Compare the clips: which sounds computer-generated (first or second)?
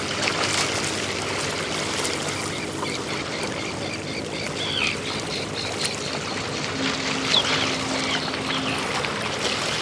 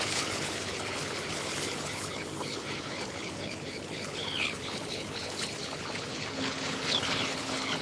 second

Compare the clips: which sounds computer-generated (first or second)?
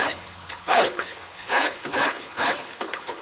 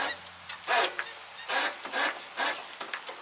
first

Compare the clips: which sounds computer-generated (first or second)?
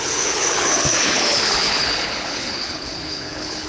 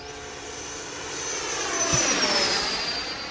first